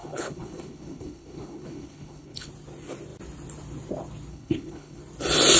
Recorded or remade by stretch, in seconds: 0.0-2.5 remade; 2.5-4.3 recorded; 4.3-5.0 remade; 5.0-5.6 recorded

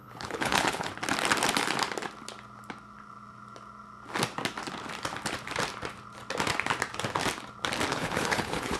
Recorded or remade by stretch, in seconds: 0.0-0.9 remade; 0.9-7.9 recorded; 7.9-8.8 remade

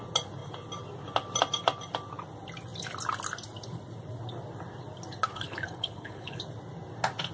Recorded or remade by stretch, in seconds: 0.0-5.3 recorded; 5.3-6.4 remade; 6.4-7.3 recorded

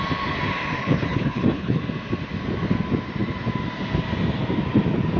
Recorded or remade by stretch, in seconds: 0.0-0.8 recorded; 0.8-1.8 remade; 1.8-5.2 recorded

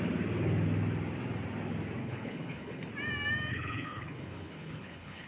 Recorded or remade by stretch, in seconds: 0.0-2.0 recorded; 2.0-2.9 remade; 2.9-3.5 recorded; 3.5-5.3 remade

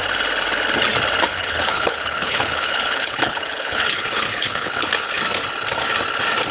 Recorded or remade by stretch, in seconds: 0.0-1.3 recorded; 1.3-5.2 remade; 5.2-6.5 recorded

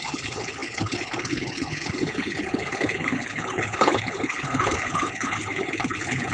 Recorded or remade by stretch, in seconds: 0.0-6.3 remade

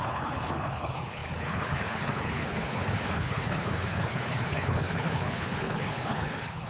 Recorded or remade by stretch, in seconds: 0.0-6.7 remade